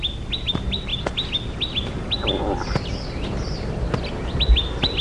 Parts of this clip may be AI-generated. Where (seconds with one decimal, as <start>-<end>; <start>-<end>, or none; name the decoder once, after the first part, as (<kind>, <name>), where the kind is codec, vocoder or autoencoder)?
none

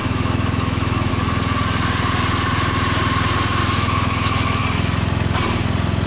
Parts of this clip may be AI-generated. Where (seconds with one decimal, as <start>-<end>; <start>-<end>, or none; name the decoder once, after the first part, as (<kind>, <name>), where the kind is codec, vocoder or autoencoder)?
0.0-1.1 (autoencoder, DAC-VAE); 3.6-4.6

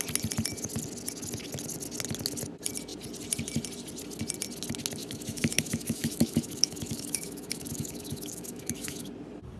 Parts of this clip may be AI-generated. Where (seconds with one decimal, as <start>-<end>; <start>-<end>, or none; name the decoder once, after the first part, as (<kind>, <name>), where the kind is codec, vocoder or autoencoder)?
5.0-9.1 (autoencoder, DAC-VAE)